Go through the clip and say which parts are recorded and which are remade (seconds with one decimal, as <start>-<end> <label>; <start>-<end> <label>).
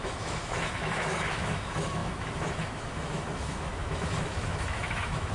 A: 0.0-5.3 remade